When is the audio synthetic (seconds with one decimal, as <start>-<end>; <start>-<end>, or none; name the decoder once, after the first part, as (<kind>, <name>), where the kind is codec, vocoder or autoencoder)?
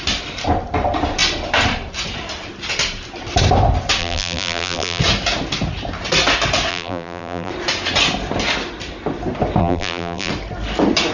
4.0-5.0 (vocoder, BigVGAN v2); 6.7-7.5; 9.6-10.3